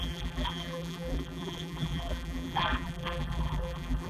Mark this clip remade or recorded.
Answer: remade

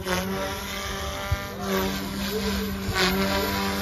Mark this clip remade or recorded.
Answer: recorded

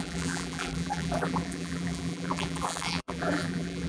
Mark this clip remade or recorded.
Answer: remade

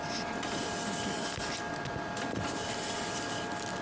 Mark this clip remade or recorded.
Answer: recorded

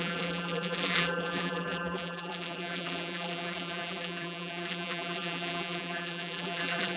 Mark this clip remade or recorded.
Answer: remade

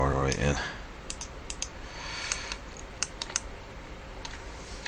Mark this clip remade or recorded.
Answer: remade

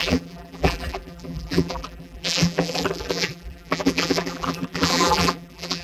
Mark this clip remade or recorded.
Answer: remade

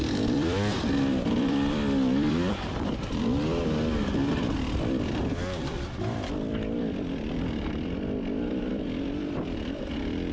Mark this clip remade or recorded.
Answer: remade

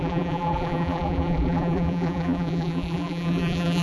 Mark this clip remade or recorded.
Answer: remade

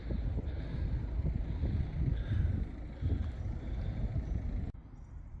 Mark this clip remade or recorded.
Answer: recorded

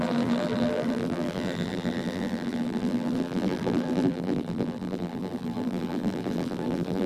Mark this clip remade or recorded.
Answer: remade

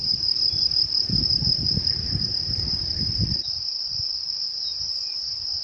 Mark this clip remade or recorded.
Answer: remade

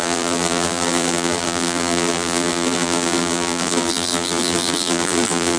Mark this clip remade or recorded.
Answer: remade